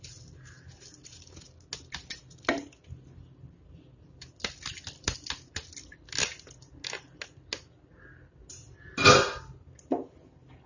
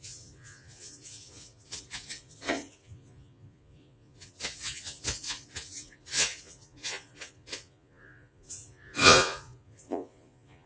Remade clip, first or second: second